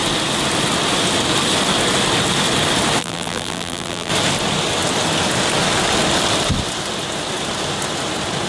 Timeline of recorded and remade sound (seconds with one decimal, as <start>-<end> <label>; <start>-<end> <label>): 0.0-3.0 recorded; 3.0-4.1 remade; 4.1-8.5 recorded

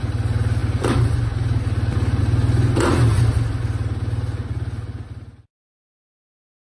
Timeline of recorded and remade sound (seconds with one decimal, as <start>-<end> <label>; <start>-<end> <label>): 0.0-6.8 recorded